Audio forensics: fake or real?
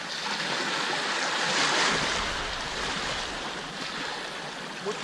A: real